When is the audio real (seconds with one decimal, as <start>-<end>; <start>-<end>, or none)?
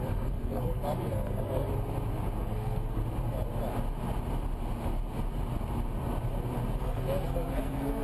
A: 1.7-2.4; 3.0-6.8